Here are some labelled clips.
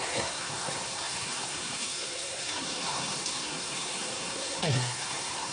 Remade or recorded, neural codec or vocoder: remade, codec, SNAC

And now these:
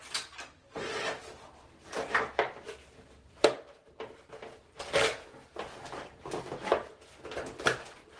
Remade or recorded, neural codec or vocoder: recorded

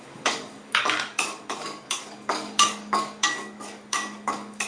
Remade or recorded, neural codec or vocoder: remade, codec, DAC